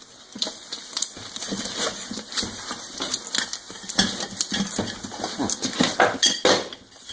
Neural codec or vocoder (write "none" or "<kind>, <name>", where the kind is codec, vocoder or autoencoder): none